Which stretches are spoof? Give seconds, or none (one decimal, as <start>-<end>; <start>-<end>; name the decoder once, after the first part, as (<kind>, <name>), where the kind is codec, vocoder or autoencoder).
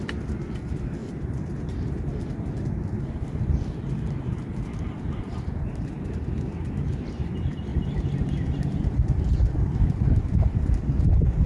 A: 1.0-2.1 (vocoder, BigVGAN v2); 7.7-10.7